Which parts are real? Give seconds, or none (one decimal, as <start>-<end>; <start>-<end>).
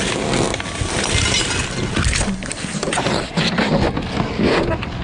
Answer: 0.0-2.8; 3.6-5.0